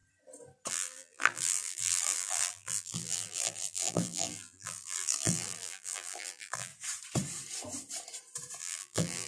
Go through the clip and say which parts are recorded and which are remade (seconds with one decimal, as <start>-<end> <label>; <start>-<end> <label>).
0.0-0.7 recorded; 0.7-6.7 remade; 6.7-8.6 recorded; 8.6-9.3 remade